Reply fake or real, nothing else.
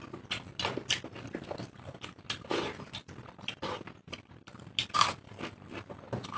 real